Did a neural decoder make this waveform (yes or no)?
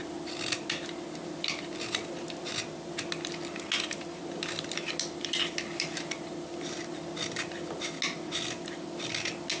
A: no